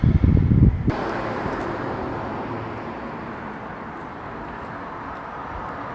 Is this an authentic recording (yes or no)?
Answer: yes